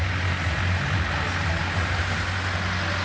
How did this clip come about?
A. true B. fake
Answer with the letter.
A